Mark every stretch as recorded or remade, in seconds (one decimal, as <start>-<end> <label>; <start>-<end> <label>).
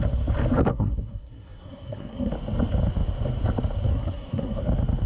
0.0-0.7 recorded; 0.7-2.3 remade; 2.3-3.9 recorded; 3.9-4.6 remade; 4.6-5.1 recorded